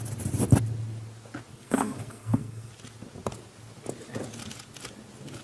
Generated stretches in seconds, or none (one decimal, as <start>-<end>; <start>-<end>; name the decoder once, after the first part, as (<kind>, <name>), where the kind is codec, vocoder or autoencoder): 1.5-2.7 (codec, SNAC)